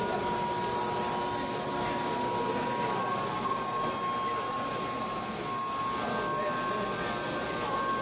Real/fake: real